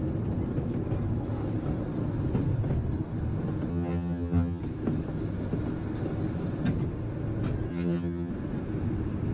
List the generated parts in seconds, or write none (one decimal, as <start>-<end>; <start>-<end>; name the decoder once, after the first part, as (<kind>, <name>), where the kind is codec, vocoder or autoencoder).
3.7-4.6 (vocoder, HiFi-GAN); 7.7-8.3